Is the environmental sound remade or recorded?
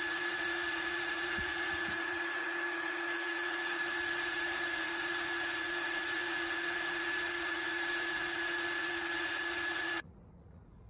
remade